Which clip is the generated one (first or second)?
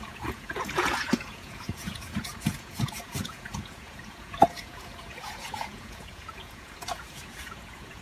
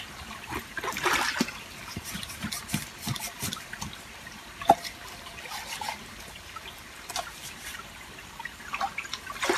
first